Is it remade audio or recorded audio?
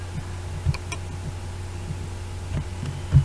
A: recorded